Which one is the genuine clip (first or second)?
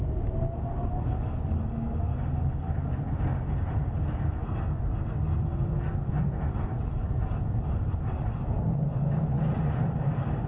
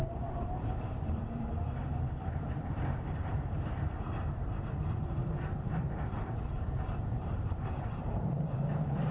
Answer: first